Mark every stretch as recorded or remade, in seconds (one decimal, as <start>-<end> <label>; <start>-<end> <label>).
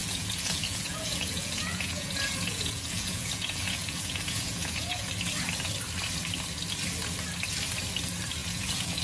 0.0-5.1 remade; 5.1-8.4 recorded; 8.4-9.0 remade